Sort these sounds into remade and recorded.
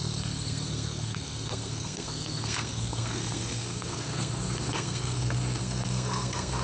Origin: remade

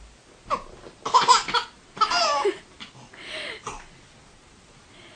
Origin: recorded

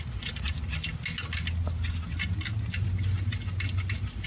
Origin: recorded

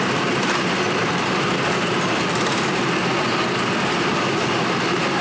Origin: recorded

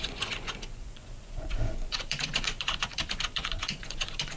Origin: remade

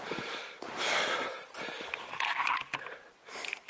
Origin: recorded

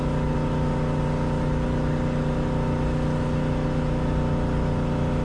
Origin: recorded